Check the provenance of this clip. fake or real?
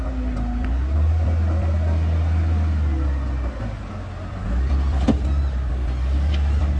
real